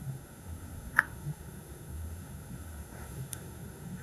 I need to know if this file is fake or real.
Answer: fake